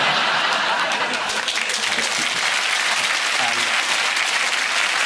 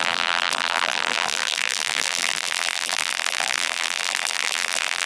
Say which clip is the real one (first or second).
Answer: first